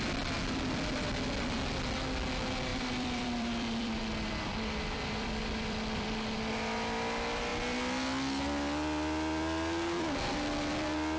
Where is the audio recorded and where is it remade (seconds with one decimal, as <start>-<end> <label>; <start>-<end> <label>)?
0.0-2.7 recorded; 2.7-6.5 remade; 6.5-11.2 recorded